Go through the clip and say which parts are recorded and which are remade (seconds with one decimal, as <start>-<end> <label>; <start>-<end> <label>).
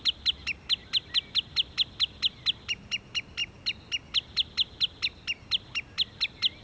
0.0-6.6 recorded